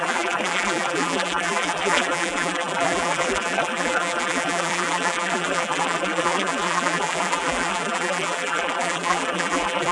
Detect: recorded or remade remade